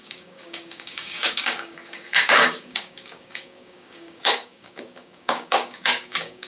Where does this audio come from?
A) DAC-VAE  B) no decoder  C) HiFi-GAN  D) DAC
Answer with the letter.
D